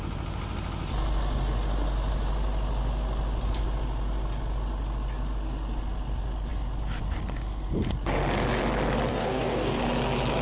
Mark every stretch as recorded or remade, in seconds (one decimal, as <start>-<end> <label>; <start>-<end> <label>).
0.0-9.1 recorded; 9.1-9.8 remade; 9.8-10.4 recorded